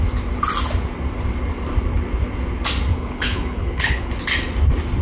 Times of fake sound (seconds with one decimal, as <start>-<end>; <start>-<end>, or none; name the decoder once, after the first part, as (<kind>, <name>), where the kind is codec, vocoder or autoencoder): 2.9-4.1 (codec, HILCodec)